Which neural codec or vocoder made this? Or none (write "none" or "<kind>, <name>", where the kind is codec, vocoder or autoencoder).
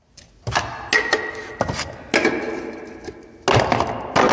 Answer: none